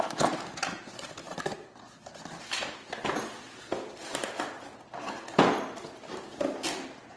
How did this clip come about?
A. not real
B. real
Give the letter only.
B